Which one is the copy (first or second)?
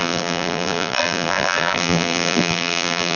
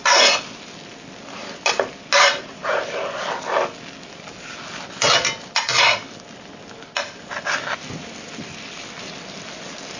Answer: first